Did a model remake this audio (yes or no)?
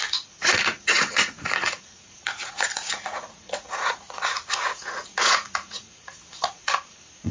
yes